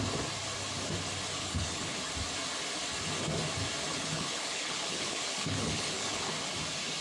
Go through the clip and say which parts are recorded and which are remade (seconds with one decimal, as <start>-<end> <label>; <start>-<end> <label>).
0.0-1.4 recorded; 1.4-2.0 remade; 2.0-3.9 recorded; 3.9-6.3 remade; 6.3-7.0 recorded